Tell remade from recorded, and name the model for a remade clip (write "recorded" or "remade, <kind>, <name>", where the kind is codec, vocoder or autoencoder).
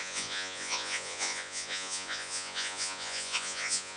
remade, vocoder, Vocos